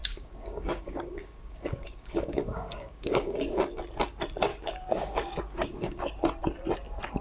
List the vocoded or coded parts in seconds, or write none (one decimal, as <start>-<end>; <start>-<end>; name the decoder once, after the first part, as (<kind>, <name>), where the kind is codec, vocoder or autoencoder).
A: 0.0-3.7 (codec, DAC); 4.5-6.1